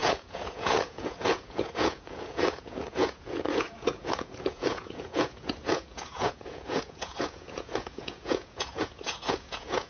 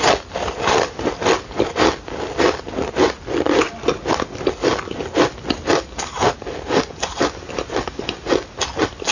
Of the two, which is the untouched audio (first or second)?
second